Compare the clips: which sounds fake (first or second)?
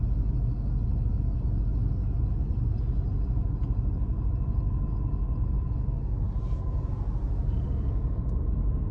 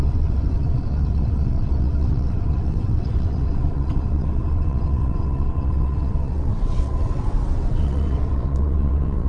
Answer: second